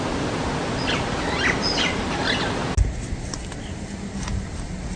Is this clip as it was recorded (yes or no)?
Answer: yes